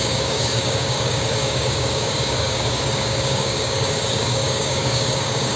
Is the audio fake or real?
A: fake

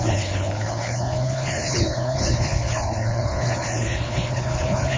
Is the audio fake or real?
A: fake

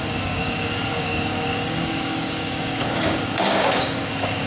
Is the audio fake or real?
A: fake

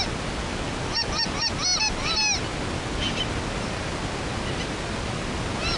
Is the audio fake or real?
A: real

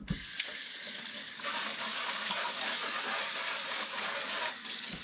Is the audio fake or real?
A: fake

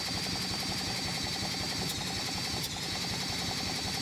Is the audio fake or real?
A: real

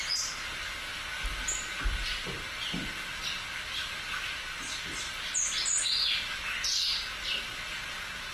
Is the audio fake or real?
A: real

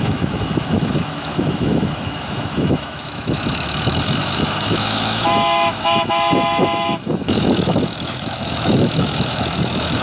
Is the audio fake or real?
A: fake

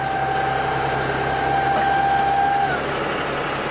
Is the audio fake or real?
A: real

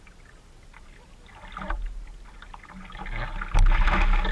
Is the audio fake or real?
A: real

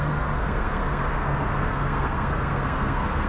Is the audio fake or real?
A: fake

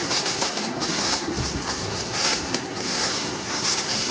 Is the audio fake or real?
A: fake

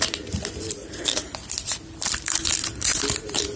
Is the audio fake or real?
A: fake